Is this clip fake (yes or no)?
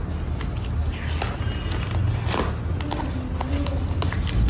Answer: no